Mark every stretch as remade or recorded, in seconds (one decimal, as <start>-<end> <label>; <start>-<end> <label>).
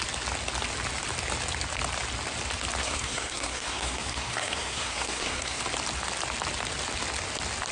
0.0-2.8 recorded; 2.8-5.6 remade; 5.6-7.7 recorded